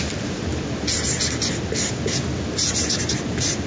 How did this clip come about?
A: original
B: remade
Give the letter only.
A